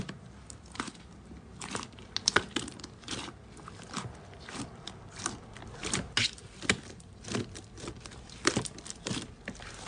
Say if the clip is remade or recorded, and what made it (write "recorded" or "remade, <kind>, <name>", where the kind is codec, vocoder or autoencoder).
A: recorded